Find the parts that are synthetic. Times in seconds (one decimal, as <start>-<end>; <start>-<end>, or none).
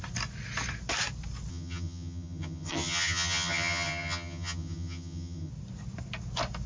1.5-5.5